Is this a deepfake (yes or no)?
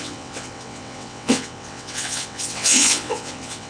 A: yes